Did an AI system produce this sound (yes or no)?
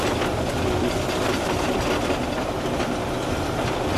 no